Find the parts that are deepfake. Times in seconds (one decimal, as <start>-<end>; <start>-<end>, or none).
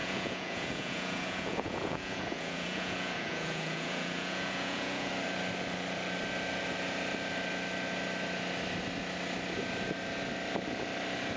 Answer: 0.0-5.1